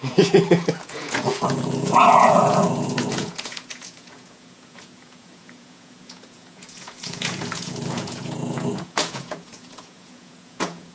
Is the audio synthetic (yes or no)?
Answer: yes